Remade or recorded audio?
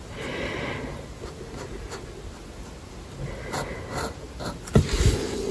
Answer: recorded